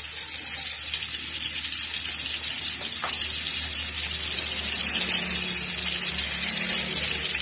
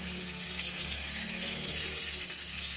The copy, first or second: second